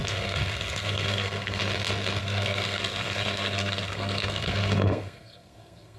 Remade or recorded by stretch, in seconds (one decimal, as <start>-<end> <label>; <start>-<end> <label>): 0.0-1.6 remade; 1.6-2.2 recorded; 2.2-6.0 remade